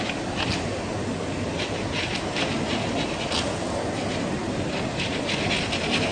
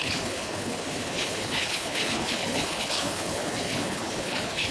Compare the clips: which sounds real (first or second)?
first